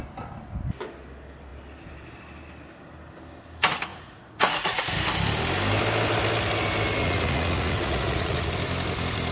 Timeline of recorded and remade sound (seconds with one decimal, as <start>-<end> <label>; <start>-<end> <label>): 0.0-3.9 recorded; 3.9-4.8 remade; 4.8-7.0 recorded; 7.0-8.5 remade; 8.5-9.3 recorded